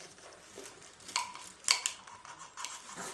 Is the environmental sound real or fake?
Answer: real